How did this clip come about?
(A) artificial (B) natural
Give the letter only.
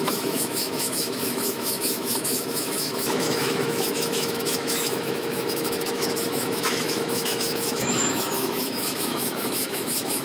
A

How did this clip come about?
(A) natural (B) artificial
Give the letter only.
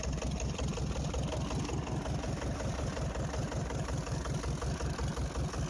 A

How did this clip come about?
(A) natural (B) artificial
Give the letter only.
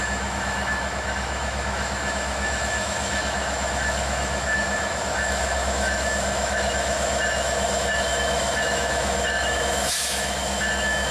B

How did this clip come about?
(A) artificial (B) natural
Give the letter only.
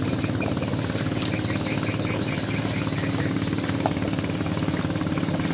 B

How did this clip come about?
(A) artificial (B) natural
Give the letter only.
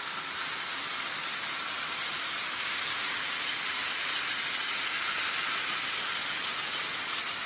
B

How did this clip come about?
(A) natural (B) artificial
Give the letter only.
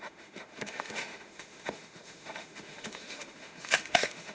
B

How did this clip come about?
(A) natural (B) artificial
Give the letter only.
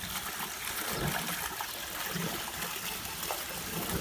A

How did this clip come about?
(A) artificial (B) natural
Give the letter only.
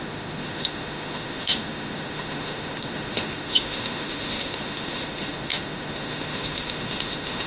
A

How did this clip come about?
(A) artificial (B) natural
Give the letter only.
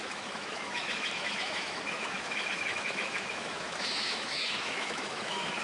A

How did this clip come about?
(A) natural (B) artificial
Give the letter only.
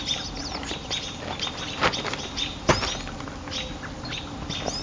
A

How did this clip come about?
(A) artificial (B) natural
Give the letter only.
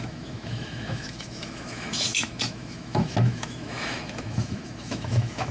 A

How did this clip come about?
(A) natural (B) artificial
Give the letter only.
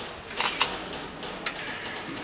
A